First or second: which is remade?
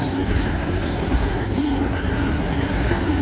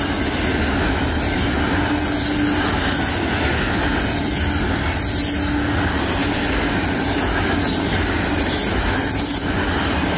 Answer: first